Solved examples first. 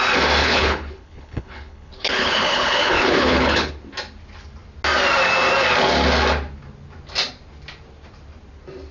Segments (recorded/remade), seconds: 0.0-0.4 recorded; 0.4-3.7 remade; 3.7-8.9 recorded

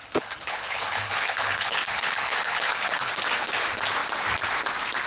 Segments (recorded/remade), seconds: 0.0-3.1 remade; 3.1-5.1 recorded

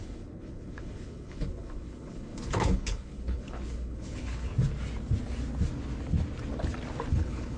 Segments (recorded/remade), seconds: 0.0-4.5 remade; 4.5-7.1 recorded; 7.1-7.6 remade